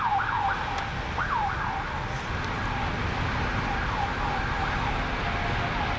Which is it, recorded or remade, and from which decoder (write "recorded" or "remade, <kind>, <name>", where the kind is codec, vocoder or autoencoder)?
recorded